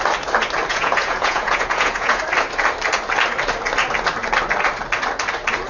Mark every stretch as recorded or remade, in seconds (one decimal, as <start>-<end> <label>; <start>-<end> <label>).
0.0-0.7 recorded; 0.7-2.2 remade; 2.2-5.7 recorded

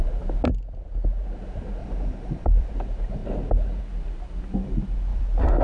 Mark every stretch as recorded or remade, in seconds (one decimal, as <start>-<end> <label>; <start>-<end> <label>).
0.0-1.8 recorded; 1.8-2.7 remade; 2.7-5.1 recorded; 5.1-5.6 remade

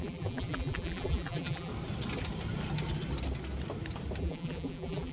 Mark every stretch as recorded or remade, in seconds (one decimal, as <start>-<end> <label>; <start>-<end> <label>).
0.0-1.7 remade; 1.7-4.2 recorded; 4.2-5.1 remade